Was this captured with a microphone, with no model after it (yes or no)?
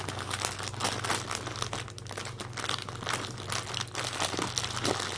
yes